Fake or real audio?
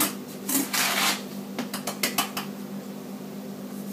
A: real